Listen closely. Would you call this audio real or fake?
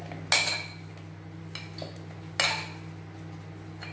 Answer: real